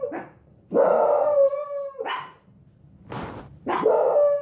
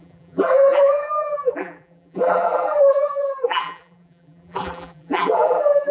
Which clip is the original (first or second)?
first